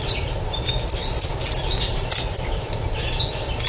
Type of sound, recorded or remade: recorded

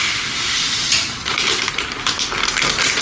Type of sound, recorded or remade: recorded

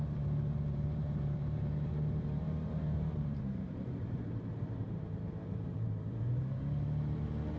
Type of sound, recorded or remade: remade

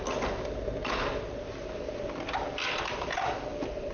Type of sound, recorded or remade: recorded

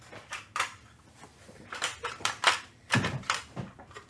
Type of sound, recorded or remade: remade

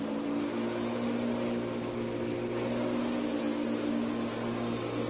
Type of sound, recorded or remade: recorded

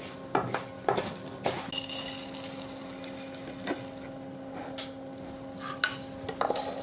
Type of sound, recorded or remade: recorded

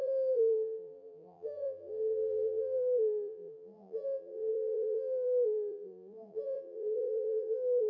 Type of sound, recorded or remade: remade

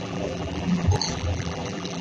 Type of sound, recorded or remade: remade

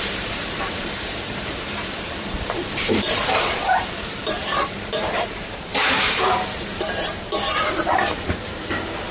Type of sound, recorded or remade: remade